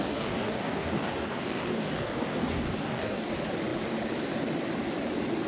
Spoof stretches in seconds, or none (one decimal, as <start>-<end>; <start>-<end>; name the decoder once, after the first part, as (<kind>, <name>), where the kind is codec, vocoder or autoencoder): 0.0-3.3 (codec, DAC)